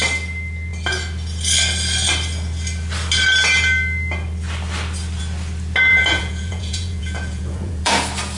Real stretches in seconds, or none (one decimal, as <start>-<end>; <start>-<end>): 0.0-5.9; 7.9-8.4